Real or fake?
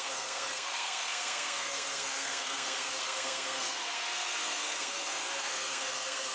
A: fake